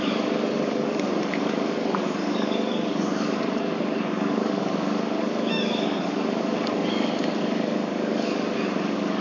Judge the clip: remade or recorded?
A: remade